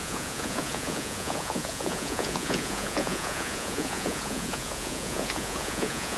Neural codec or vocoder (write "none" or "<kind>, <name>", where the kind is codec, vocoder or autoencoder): vocoder, Vocos